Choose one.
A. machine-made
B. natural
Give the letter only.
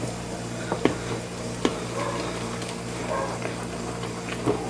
B